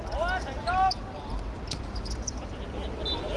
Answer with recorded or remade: recorded